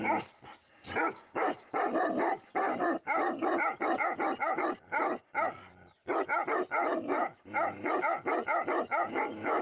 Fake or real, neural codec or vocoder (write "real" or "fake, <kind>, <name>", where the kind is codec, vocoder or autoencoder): real